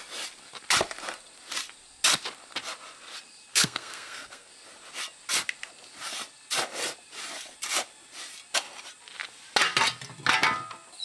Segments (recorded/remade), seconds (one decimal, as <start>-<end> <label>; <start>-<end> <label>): 0.0-3.5 recorded; 3.5-4.5 remade; 4.5-11.0 recorded